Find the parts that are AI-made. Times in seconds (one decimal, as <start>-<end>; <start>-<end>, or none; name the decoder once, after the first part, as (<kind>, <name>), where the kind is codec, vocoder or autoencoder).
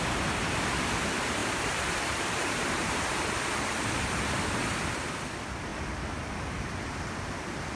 1.4-3.0 (vocoder, BigVGAN v2)